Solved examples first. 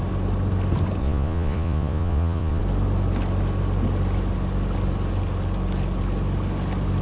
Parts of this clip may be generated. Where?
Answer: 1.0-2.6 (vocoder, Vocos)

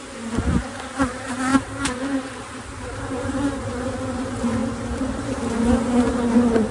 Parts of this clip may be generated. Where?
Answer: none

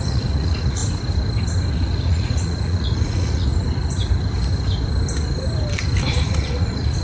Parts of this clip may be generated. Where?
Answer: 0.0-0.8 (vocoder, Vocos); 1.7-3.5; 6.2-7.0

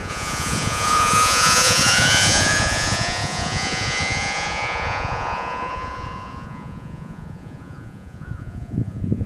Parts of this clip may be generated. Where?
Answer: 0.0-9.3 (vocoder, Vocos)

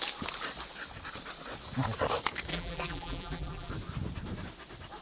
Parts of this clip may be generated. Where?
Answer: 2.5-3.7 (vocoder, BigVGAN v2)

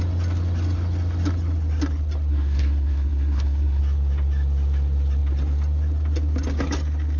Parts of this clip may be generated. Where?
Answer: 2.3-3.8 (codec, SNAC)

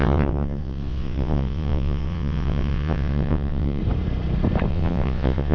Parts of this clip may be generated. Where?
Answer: 0.0-3.8 (vocoder, WaveNeXt); 4.7-5.5

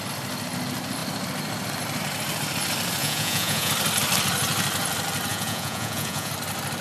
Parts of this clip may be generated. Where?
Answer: 3.0-3.7 (vocoder, Vocos); 5.3-6.3